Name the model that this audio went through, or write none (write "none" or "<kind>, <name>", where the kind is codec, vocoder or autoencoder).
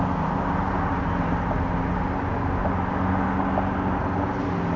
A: none